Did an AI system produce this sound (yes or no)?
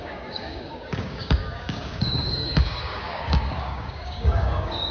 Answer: yes